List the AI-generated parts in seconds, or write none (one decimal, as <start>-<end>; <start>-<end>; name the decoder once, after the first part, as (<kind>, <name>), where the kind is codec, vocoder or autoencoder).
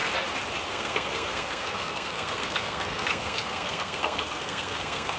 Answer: 0.7-5.2 (codec, SNAC)